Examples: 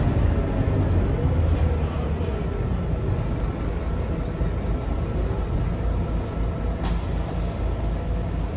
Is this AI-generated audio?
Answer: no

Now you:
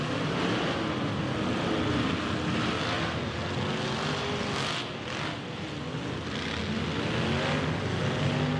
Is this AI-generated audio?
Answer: no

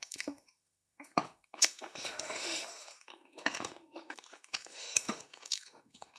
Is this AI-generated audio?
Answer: yes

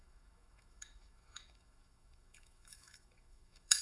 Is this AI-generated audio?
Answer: yes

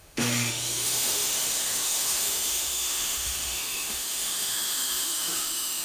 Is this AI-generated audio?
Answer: yes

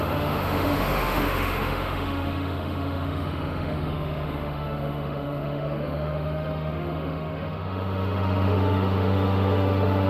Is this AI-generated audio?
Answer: yes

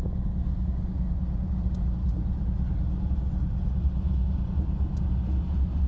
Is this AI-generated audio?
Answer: no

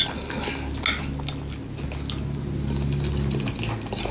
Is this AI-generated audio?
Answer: no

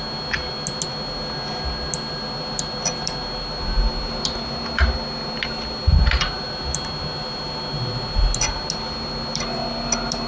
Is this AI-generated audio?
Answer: no